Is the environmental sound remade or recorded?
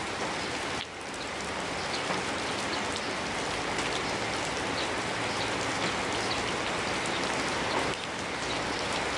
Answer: recorded